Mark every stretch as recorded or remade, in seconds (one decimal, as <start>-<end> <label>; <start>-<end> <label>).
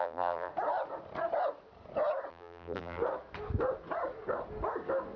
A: 0.0-0.5 remade; 0.5-2.3 recorded; 2.3-3.0 remade; 3.0-5.2 recorded